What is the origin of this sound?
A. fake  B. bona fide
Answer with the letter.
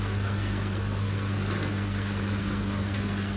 A